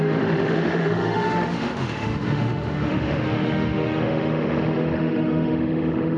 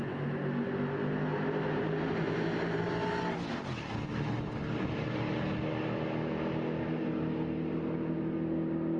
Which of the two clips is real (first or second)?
second